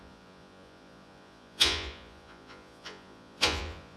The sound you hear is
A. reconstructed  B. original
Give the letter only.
A